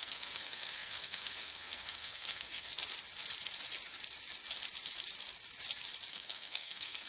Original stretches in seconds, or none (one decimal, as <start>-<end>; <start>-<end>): 2.7-6.1